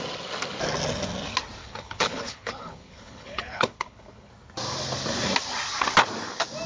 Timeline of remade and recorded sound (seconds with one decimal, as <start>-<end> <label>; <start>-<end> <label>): 0.0-1.6 recorded; 1.6-4.3 remade; 4.3-6.7 recorded